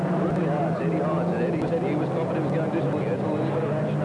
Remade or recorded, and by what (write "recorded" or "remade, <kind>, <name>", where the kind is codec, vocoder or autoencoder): recorded